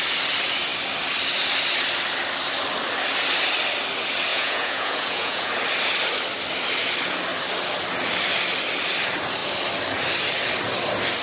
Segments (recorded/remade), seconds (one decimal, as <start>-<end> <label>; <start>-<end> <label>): 0.0-4.3 recorded; 4.3-5.5 remade; 5.5-11.2 recorded

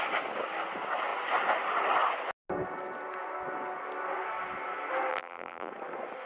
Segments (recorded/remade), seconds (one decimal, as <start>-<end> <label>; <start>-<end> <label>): 0.0-5.1 recorded; 5.1-5.7 remade; 5.7-6.3 recorded

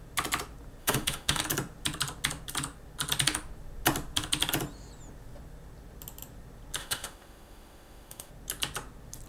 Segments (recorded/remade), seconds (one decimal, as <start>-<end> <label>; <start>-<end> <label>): 0.0-0.8 recorded; 0.8-1.4 remade; 1.4-6.8 recorded; 6.8-8.3 remade; 8.3-9.3 recorded

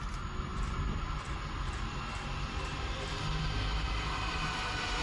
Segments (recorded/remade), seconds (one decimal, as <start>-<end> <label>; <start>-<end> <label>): 0.0-5.0 recorded

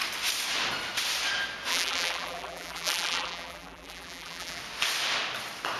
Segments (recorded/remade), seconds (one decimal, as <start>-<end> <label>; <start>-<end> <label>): 0.0-1.7 recorded; 1.7-4.6 remade; 4.6-5.8 recorded

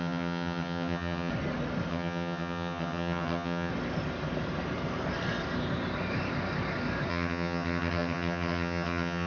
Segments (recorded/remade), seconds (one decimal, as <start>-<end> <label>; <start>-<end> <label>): 0.0-1.3 remade; 1.3-1.9 recorded; 1.9-3.7 remade; 3.7-7.1 recorded; 7.1-9.3 remade